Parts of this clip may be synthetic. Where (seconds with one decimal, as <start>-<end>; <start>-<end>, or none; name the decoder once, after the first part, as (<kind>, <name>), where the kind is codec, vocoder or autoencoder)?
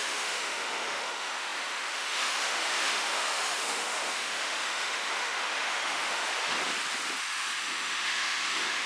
0.0-6.2 (autoencoder, DAC-VAE); 7.2-8.9